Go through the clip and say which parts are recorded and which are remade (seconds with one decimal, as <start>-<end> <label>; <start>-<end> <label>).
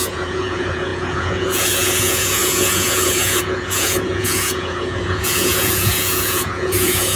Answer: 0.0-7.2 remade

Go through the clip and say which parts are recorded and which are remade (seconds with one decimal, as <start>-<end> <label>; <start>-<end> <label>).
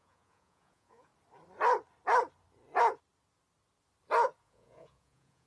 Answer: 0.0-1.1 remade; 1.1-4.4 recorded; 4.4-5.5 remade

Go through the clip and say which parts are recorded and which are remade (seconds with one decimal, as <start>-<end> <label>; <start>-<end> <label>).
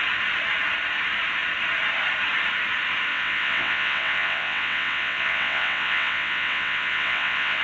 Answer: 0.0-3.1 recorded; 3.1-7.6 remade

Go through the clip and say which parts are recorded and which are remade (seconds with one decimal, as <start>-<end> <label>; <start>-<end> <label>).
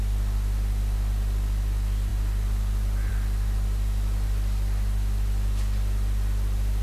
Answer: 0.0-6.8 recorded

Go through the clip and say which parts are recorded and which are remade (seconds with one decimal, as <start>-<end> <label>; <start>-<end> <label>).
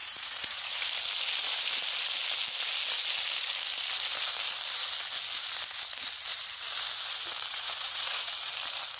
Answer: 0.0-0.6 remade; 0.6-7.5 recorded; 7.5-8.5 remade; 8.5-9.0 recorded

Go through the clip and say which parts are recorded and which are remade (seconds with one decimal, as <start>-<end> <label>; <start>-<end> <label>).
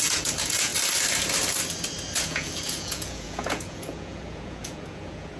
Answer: 0.0-0.7 remade; 0.7-2.2 recorded; 2.2-5.4 remade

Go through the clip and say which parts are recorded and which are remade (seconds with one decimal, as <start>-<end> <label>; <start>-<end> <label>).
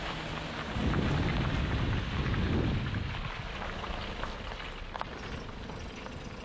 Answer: 0.0-6.4 recorded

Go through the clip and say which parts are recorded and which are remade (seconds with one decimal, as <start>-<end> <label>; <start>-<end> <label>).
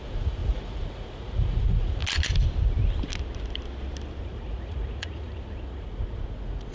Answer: 0.0-2.0 remade; 2.0-4.2 recorded; 4.2-6.7 remade